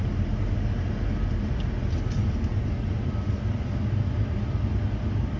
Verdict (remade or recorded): recorded